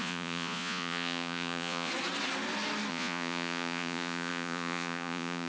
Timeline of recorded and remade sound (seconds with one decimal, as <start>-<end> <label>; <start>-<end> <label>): 0.0-1.9 remade; 1.9-2.9 recorded; 2.9-5.5 remade